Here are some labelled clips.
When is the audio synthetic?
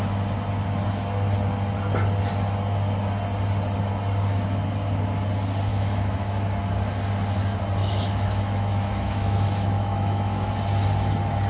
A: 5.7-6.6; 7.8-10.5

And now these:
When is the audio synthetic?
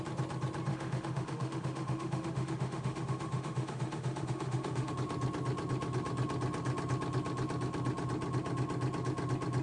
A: 0.7-4.9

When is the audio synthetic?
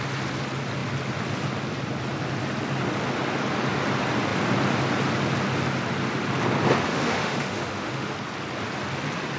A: 6.9-8.1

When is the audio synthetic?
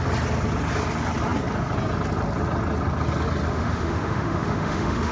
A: 3.5-5.1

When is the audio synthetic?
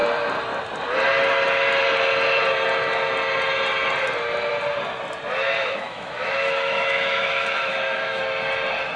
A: 5.6-8.2